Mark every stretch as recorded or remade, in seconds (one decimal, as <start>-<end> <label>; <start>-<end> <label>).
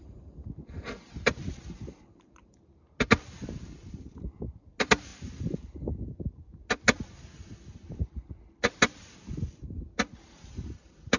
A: 0.0-11.2 recorded